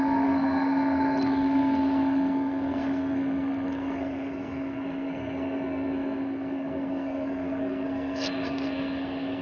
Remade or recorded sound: remade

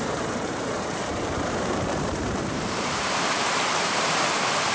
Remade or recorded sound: remade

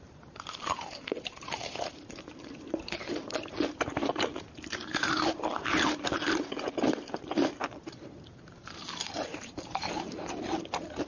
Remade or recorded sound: remade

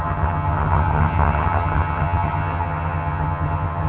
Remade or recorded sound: remade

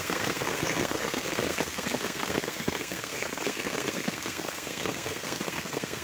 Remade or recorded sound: remade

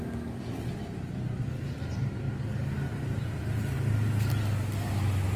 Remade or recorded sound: recorded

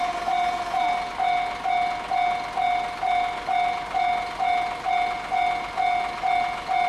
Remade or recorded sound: recorded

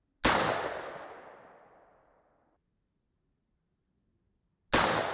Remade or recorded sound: recorded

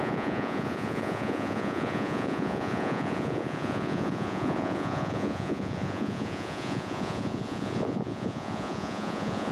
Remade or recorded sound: remade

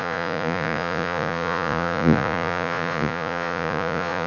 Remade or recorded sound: remade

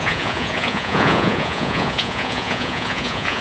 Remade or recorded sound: remade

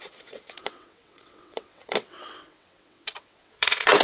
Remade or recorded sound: remade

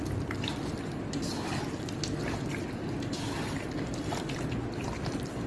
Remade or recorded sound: recorded